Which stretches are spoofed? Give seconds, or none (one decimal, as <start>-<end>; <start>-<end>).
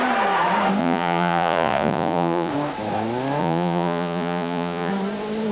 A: 0.8-2.5; 3.4-4.9